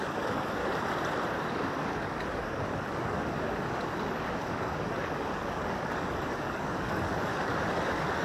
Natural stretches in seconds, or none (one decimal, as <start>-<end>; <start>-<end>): 0.6-1.6